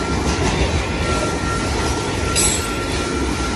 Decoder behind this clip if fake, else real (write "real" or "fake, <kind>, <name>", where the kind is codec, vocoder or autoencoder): real